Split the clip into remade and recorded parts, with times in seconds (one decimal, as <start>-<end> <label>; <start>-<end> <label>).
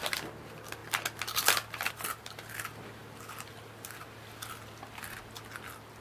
0.0-6.0 recorded